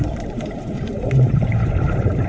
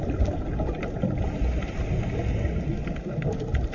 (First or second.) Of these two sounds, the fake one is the first